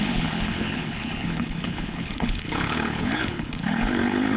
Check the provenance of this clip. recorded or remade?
remade